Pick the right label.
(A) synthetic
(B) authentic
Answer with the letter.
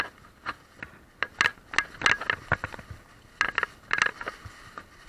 B